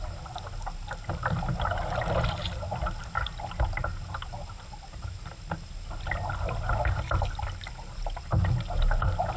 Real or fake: real